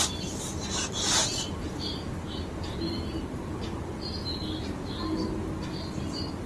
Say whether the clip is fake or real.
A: real